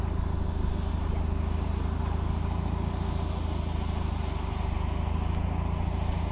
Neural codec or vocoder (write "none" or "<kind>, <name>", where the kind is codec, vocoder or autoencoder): none